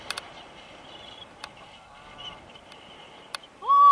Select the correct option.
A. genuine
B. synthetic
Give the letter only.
A